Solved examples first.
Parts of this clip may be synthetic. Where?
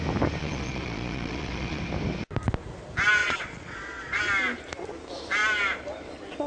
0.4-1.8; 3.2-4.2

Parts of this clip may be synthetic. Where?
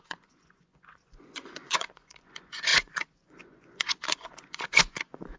0.0-5.4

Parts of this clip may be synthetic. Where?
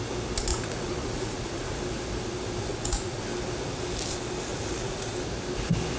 0.5-1.8; 2.7-3.2; 4.5-5.1